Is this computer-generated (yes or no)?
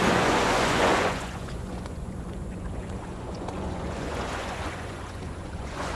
yes